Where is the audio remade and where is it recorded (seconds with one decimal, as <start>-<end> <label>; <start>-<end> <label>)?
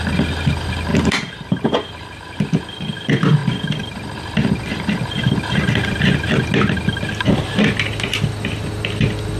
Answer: 0.0-0.9 recorded; 0.9-2.5 remade; 2.5-9.4 recorded